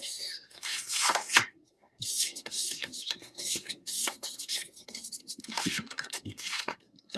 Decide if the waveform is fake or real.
fake